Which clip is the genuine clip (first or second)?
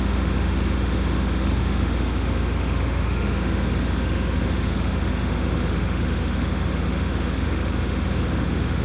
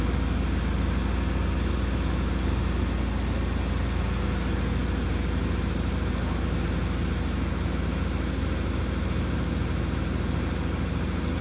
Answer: second